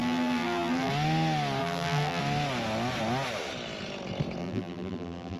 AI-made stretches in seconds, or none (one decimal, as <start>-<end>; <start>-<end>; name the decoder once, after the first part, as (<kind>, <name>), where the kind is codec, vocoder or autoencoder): 0.0-0.9 (vocoder, BigVGAN v2); 1.6-2.2; 4.4-5.4